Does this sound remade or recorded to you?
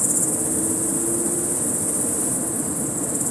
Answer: recorded